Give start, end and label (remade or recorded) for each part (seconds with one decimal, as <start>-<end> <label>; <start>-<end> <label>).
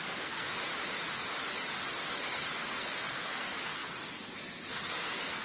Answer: 0.0-0.7 remade; 0.7-2.1 recorded; 2.1-5.4 remade